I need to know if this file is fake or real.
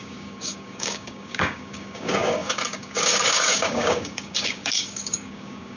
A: fake